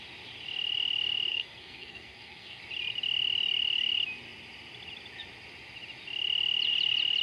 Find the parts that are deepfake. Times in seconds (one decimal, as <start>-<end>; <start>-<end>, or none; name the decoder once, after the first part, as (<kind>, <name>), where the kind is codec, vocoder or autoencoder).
1.3-2.6 (codec, SNAC)